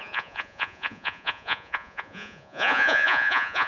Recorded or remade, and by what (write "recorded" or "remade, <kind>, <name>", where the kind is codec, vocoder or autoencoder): remade, vocoder, Vocos